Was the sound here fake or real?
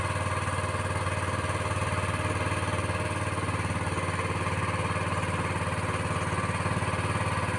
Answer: real